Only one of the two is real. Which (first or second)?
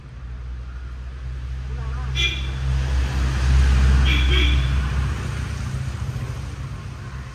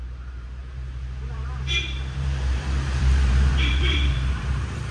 first